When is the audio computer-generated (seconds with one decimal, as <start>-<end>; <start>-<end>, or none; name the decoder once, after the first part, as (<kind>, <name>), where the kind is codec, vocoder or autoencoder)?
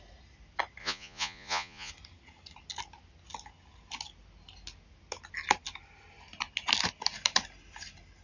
0.8-1.9 (vocoder, Vocos)